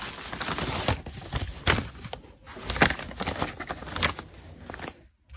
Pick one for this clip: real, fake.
real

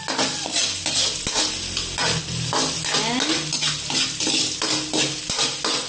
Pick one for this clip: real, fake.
real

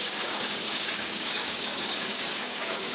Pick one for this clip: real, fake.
fake